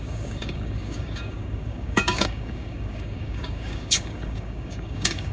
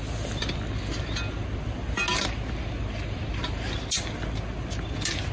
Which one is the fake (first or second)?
first